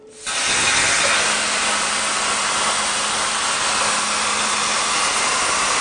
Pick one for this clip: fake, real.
real